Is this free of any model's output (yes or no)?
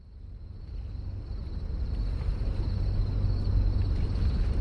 yes